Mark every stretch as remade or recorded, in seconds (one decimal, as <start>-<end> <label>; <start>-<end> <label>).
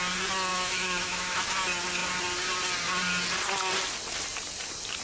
0.0-0.5 recorded; 0.5-1.4 remade; 1.4-5.0 recorded